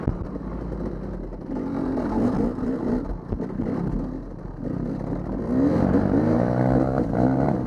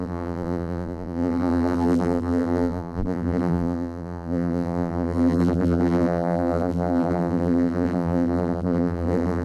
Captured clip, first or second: first